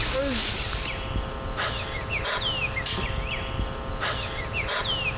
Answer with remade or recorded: recorded